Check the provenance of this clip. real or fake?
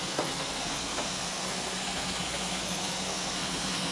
fake